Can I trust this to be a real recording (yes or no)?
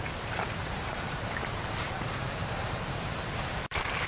no